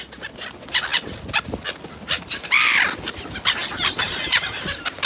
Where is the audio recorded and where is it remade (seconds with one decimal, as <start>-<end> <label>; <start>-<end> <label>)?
0.0-5.1 recorded

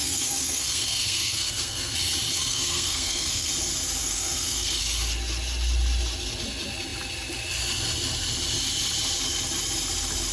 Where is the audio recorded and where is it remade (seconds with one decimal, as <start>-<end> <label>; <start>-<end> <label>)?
0.0-1.9 remade; 1.9-2.4 recorded; 2.4-3.5 remade; 3.5-4.0 recorded; 4.0-4.8 remade; 4.8-10.3 recorded